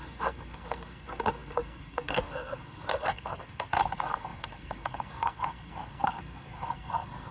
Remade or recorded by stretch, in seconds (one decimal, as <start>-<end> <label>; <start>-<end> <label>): 0.0-7.3 remade